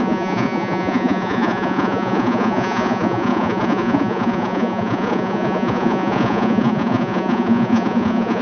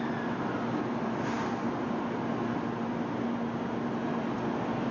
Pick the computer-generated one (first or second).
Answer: first